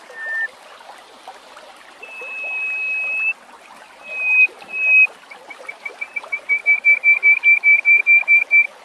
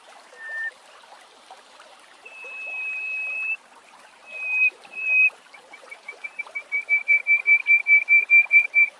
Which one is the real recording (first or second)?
first